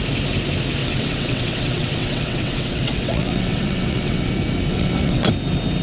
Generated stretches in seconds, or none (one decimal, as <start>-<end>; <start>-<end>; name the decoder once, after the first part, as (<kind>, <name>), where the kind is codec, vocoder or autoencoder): 0.8-4.3 (vocoder, WaveNeXt); 4.7-5.3